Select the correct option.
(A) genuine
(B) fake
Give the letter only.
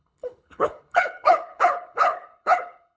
B